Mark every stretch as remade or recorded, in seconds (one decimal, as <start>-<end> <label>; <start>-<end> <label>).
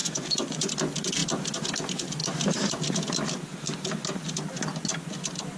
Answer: 0.0-0.7 remade; 0.7-5.6 recorded